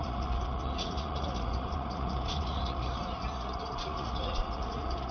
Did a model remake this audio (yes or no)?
yes